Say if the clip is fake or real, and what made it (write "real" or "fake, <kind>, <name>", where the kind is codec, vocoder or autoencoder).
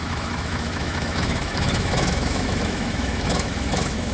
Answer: fake, autoencoder, DAC-VAE